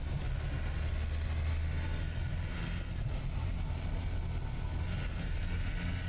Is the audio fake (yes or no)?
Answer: no